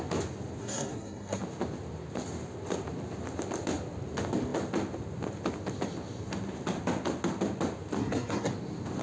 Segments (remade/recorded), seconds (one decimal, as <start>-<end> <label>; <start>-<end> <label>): 0.0-0.6 recorded; 0.6-1.4 remade; 1.4-8.0 recorded; 8.0-8.5 remade; 8.5-9.0 recorded

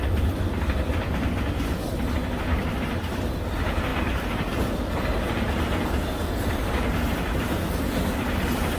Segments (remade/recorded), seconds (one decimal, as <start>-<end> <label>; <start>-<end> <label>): 0.0-8.8 recorded

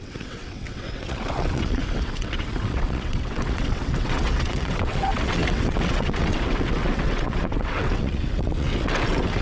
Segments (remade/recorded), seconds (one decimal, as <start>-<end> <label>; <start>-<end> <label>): 0.0-9.4 remade

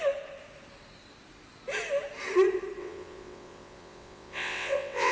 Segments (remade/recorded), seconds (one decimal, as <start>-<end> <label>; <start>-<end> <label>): 0.0-2.8 recorded; 2.8-5.1 remade

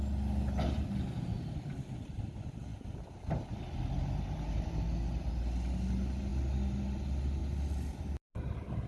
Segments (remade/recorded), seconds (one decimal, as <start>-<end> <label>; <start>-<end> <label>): 0.0-8.9 recorded

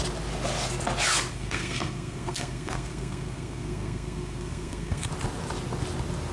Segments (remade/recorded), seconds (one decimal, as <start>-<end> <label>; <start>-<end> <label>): 0.0-1.3 recorded; 1.3-5.1 remade; 5.1-6.3 recorded